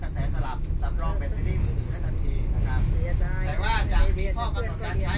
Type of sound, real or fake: real